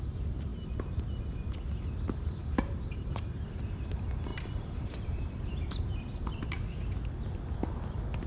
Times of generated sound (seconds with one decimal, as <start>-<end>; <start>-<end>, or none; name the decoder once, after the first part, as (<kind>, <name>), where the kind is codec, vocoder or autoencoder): 2.4-3.3 (vocoder, BigVGAN v2); 4.3-6.0